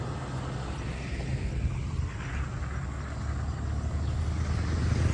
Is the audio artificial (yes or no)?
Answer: no